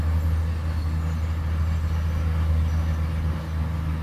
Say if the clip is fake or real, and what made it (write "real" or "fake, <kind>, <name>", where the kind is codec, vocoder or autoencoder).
real